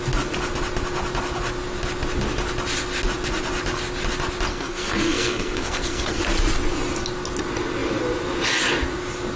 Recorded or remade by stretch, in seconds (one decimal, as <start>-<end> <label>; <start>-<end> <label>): 0.0-4.5 recorded; 4.5-6.2 remade; 6.2-9.4 recorded